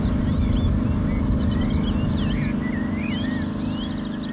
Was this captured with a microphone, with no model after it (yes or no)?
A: yes